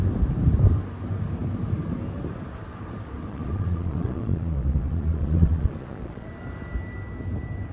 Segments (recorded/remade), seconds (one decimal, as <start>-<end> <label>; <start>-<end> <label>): 0.0-3.3 recorded; 3.3-6.3 remade; 6.3-7.7 recorded